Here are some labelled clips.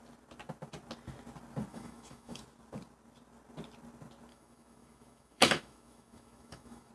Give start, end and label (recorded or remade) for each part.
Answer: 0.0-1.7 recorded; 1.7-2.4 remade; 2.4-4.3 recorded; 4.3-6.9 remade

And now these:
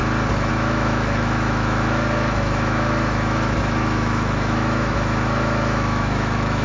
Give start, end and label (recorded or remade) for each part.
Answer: 0.0-0.5 recorded; 0.5-6.6 remade

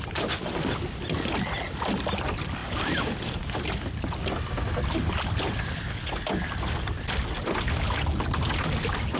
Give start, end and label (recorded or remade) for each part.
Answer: 0.0-9.2 recorded